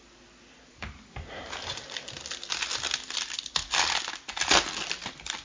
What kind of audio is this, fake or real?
real